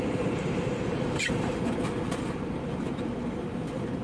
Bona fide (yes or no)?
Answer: no